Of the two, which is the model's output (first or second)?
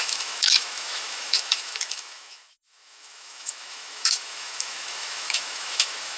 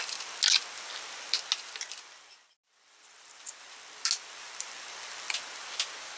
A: first